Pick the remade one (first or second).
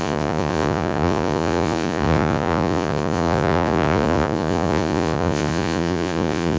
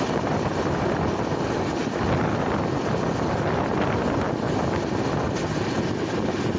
first